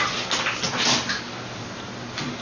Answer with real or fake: real